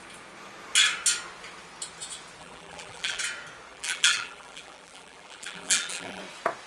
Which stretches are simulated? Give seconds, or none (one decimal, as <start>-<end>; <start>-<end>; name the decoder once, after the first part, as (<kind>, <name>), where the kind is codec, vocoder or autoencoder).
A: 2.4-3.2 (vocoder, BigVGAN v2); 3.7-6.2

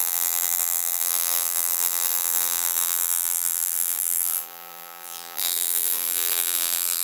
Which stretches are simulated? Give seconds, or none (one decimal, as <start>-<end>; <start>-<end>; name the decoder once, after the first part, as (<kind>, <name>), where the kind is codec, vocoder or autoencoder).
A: 0.0-7.0 (vocoder, BigVGAN v2)

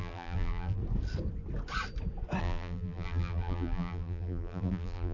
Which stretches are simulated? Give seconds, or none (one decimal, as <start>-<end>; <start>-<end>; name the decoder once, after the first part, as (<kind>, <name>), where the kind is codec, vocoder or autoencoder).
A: 0.0-0.8 (vocoder, BigVGAN v2); 2.4-5.1

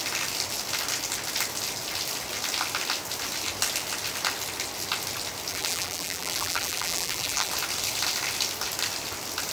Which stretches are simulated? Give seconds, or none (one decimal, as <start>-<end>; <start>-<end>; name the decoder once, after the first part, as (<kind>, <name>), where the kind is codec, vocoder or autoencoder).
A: 5.5-7.5 (vocoder, BigVGAN v2)